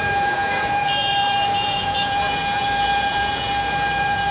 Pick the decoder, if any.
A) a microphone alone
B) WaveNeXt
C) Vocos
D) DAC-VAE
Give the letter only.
C